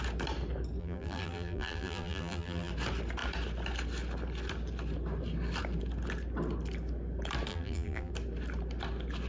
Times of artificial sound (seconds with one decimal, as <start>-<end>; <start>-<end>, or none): 0.8-2.7; 7.5-8.1